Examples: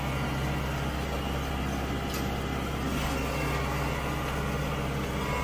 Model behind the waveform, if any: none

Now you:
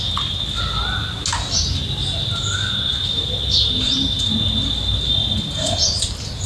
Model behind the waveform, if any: none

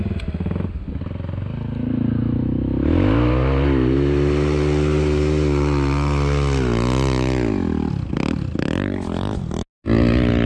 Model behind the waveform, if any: none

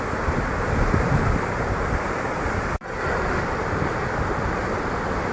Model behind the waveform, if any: none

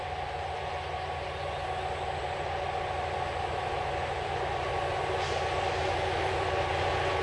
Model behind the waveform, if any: none